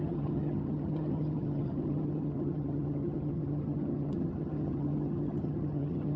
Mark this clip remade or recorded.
remade